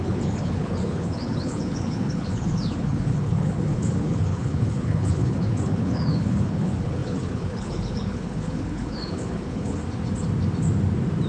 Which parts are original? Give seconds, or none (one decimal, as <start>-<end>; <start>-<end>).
9.8-11.3